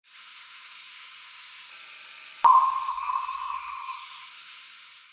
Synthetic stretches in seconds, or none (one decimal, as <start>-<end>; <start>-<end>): 0.0-1.7; 2.9-5.1